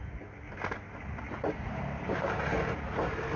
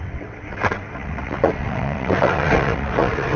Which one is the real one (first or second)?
first